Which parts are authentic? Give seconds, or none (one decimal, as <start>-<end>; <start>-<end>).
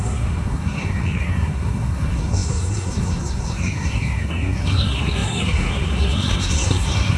none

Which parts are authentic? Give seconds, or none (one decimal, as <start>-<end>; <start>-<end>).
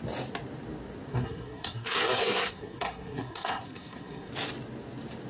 0.0-1.1; 4.3-5.3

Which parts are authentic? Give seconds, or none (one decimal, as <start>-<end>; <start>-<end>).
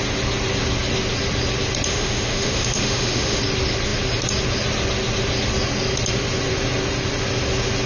0.0-1.9; 3.4-7.9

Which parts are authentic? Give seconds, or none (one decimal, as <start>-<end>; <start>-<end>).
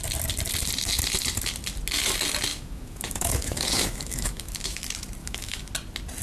0.0-2.5; 4.8-5.2; 5.7-6.2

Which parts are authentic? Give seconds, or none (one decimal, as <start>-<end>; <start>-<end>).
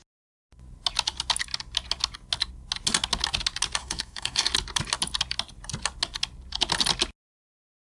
0.0-3.8; 4.5-7.8